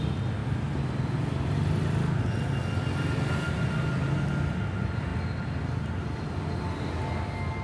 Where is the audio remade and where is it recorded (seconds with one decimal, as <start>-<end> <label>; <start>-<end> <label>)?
0.0-7.6 recorded